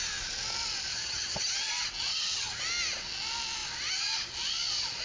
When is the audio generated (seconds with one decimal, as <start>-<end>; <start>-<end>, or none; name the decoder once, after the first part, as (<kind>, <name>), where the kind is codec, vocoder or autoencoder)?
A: 0.9-1.7 (vocoder, HiFi-GAN); 2.1-2.6